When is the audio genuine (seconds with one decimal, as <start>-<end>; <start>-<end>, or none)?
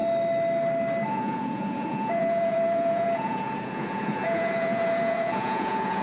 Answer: 0.0-1.1